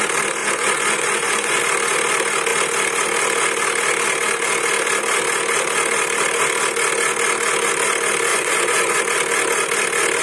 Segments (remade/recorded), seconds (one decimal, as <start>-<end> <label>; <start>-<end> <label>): 0.0-0.4 recorded; 0.4-1.6 remade; 1.6-8.3 recorded; 8.3-9.0 remade; 9.0-10.2 recorded